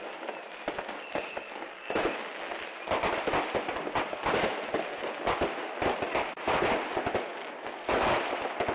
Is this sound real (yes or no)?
yes